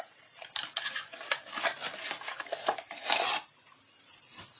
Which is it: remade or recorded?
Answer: recorded